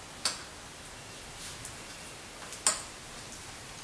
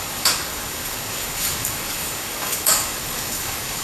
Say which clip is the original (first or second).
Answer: first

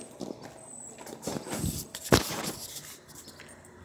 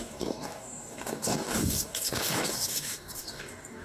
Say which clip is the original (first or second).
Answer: first